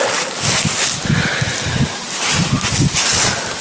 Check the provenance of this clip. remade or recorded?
recorded